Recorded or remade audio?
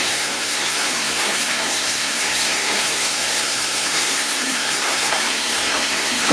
remade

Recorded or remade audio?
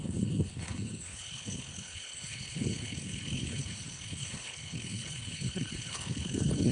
remade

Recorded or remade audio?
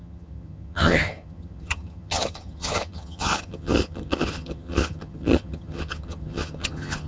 remade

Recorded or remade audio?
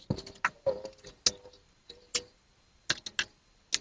recorded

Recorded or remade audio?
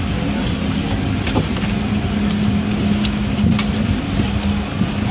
recorded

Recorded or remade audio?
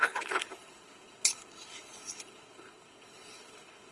remade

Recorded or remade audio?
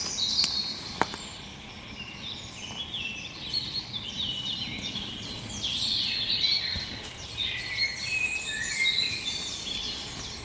recorded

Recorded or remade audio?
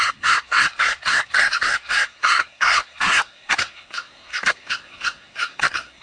remade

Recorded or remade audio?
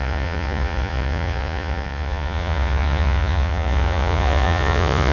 remade